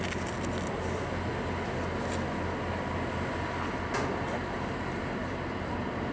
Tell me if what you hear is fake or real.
real